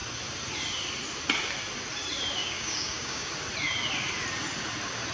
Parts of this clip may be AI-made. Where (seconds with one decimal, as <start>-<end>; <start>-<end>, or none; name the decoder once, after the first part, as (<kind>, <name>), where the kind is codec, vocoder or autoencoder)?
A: 2.4-3.3 (codec, DAC)

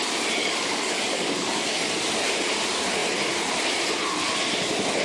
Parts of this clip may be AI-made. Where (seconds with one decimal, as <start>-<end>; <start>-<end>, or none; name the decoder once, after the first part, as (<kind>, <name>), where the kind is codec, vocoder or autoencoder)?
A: 0.4-2.0 (codec, DAC)

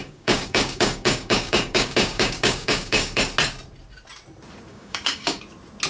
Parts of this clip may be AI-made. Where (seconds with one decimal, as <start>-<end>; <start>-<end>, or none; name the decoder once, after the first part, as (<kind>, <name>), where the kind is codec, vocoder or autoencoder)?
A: 0.0-3.2 (codec, DAC); 4.7-5.4

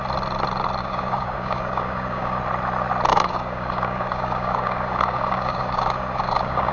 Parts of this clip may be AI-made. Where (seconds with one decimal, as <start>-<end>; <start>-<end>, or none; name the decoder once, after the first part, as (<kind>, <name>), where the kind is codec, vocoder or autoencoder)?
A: 0.8-2.4 (codec, DAC); 3.1-6.7

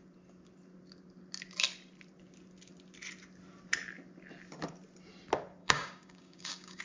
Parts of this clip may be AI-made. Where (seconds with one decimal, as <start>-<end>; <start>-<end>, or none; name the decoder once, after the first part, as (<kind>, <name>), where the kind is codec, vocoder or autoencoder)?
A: 5.6-6.8 (codec, DAC)

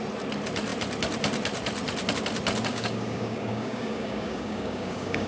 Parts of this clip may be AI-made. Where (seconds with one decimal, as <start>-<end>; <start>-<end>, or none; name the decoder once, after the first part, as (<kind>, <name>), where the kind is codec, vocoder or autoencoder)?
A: 2.7-5.3 (codec, DAC)

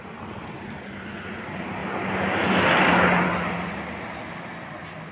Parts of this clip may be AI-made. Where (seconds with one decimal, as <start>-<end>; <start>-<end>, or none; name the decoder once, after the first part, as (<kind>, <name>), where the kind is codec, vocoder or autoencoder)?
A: none